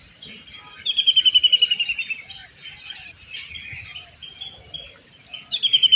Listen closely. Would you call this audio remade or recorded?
recorded